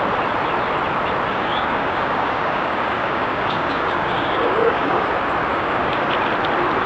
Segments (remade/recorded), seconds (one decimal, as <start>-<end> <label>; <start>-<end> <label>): 0.0-1.3 recorded; 1.3-5.1 remade; 5.1-5.5 recorded; 5.5-6.1 remade; 6.1-6.9 recorded

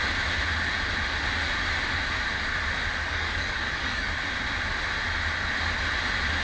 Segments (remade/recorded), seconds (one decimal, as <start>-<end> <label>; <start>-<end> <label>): 0.0-3.0 recorded; 3.0-4.1 remade; 4.1-6.4 recorded

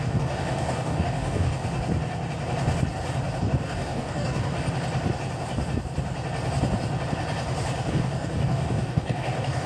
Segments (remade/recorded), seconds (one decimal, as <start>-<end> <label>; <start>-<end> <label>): 0.0-1.6 remade; 1.6-3.4 recorded; 3.4-4.5 remade; 4.5-7.9 recorded; 7.9-9.7 remade

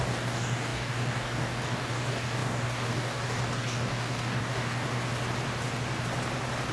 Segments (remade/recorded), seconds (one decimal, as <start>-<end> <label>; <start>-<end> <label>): 0.0-5.0 remade; 5.0-6.7 recorded

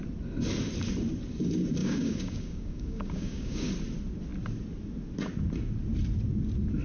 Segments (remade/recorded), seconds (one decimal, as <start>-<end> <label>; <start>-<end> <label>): 0.0-1.8 recorded; 1.8-3.7 remade; 3.7-6.8 recorded

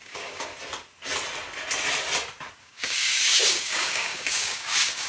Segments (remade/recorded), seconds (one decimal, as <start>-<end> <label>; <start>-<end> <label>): 0.0-0.5 remade; 0.5-2.6 recorded; 2.6-5.1 remade